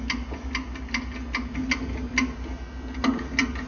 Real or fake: real